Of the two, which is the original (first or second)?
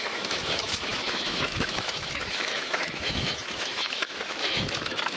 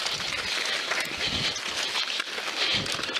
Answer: second